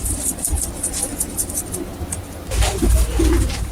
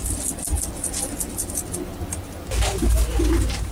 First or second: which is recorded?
second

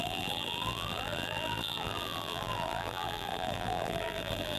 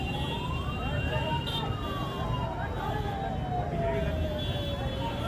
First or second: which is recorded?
second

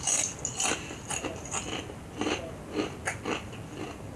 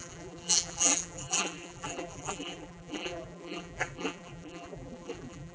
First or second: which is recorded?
first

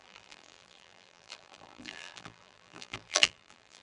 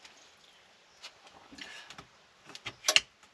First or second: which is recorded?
second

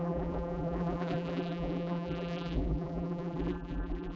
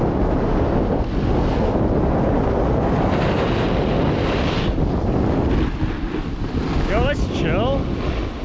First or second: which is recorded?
second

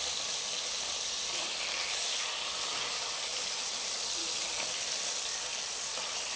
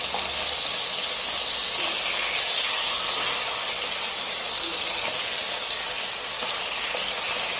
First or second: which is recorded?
second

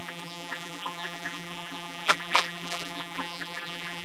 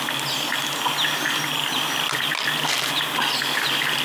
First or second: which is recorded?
second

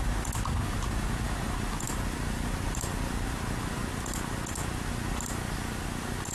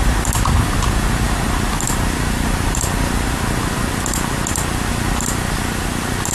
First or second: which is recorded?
first